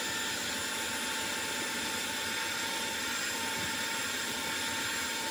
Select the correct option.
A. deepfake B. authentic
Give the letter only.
B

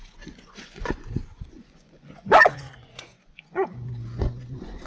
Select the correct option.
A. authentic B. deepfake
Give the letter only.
B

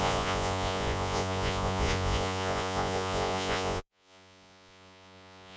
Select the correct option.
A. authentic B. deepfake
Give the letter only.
B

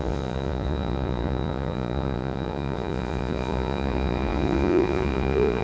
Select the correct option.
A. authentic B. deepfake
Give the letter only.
B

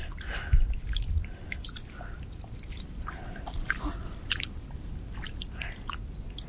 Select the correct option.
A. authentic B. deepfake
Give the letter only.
A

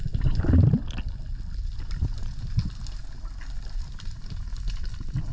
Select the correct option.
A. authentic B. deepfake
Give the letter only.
A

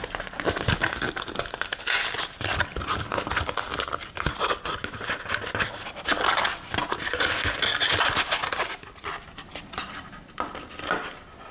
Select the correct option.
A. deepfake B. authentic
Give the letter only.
B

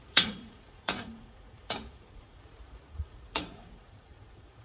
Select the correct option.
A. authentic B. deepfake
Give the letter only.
B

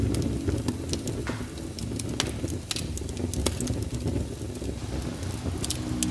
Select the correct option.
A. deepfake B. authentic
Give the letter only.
B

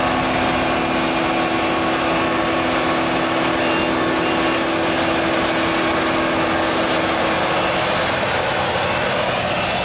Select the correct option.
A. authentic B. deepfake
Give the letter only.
A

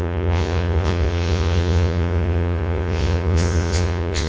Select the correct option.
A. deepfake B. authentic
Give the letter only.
A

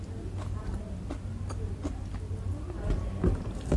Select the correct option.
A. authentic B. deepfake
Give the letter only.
A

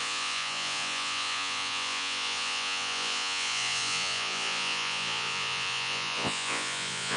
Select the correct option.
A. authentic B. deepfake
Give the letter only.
B